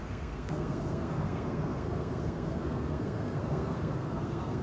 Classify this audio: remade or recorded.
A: remade